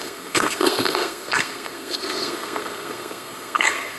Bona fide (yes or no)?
no